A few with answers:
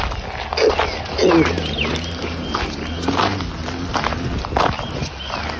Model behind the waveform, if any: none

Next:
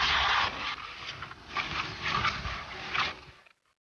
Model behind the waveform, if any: none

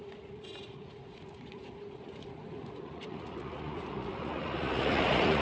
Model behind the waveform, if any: vocoder, Vocos